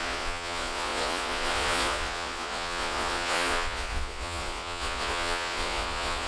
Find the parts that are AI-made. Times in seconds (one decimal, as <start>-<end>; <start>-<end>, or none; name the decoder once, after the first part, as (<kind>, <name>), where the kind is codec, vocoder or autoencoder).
0.0-6.3 (vocoder, Vocos)